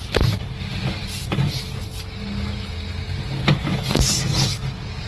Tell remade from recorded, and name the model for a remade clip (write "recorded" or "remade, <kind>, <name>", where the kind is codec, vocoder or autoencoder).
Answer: recorded